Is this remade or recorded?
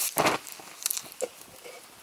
recorded